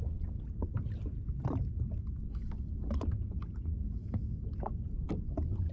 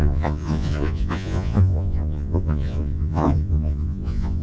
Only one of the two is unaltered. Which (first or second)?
first